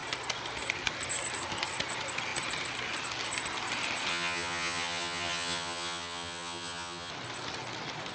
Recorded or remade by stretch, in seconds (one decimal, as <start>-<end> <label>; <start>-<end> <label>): 0.0-4.1 recorded; 4.1-7.1 remade; 7.1-8.1 recorded